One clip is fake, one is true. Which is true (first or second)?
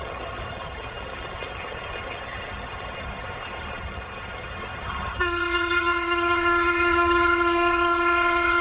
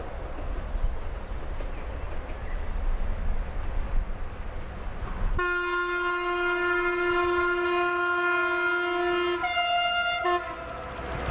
second